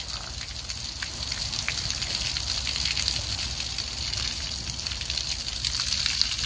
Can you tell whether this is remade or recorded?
recorded